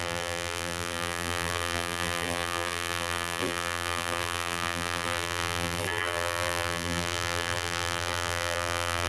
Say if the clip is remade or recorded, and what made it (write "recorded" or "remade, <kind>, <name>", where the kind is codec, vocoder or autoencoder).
remade, vocoder, BigVGAN v2